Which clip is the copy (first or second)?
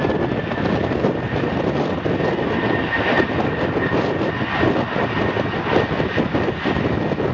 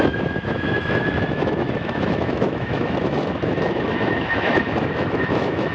second